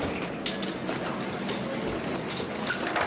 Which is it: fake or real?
real